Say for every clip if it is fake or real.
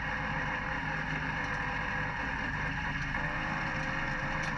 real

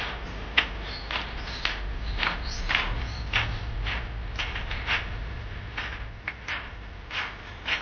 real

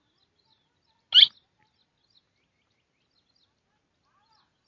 real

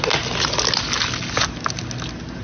real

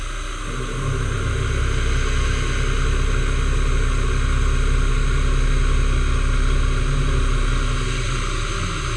real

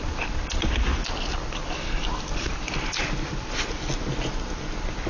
real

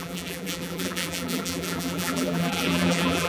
fake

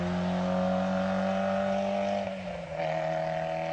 real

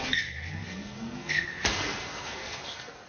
fake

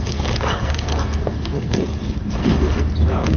fake